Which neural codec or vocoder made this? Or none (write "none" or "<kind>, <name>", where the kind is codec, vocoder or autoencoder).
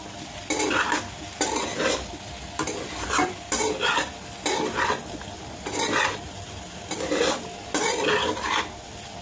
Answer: none